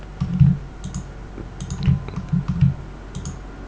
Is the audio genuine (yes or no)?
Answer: yes